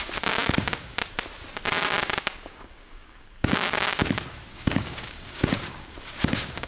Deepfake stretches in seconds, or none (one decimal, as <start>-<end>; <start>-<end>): 0.0-1.0; 2.2-4.0; 4.5-6.7